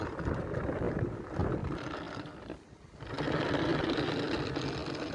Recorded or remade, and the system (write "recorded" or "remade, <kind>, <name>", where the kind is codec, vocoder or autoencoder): recorded